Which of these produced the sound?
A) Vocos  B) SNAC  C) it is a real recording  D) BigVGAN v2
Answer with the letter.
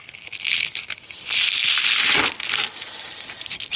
C